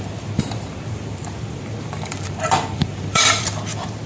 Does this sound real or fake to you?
fake